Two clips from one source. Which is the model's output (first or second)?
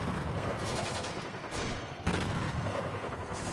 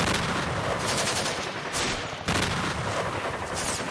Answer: first